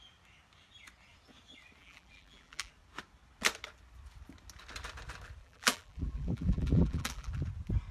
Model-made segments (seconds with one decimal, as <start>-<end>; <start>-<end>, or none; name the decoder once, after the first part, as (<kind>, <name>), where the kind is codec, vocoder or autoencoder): 1.8-2.7 (vocoder, BigVGAN v2); 5.4-7.4